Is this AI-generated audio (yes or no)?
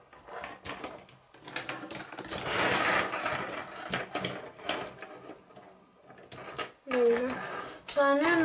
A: no